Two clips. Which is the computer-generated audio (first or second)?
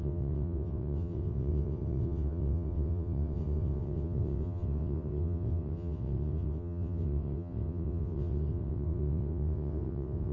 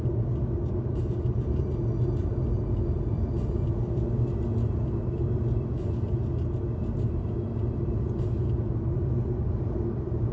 first